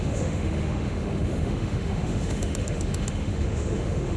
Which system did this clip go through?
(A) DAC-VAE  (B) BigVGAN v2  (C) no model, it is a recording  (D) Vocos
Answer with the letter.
A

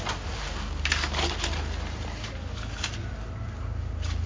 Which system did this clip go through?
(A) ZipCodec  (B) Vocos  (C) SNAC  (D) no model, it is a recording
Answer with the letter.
D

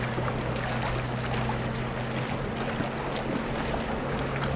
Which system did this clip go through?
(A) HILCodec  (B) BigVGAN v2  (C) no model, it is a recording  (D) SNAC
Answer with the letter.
C